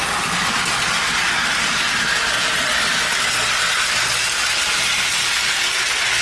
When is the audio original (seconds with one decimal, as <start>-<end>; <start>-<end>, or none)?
0.0-6.2